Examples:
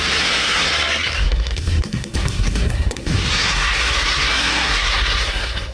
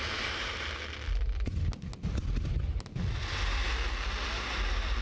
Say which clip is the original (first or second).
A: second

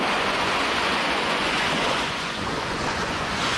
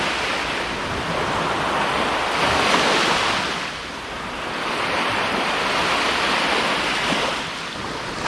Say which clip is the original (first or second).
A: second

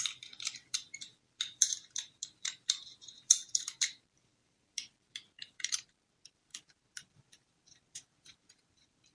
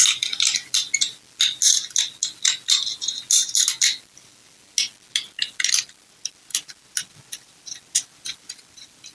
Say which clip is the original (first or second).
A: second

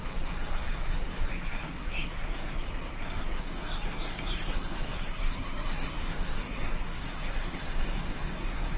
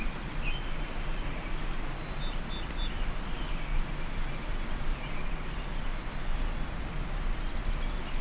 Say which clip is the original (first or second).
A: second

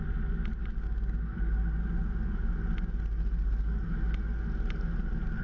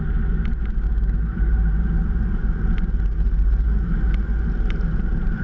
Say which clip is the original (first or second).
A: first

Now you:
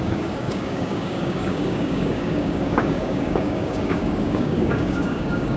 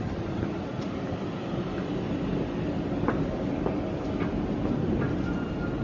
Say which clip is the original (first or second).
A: second